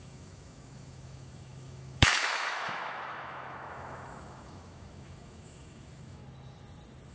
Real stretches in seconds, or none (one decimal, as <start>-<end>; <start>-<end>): 6.2-7.1